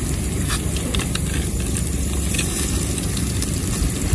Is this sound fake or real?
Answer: real